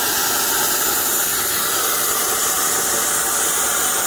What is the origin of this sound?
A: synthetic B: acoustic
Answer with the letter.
B